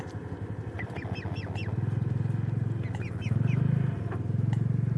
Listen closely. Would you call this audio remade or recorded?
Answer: recorded